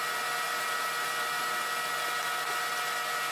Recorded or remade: recorded